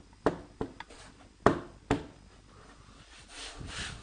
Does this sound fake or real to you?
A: real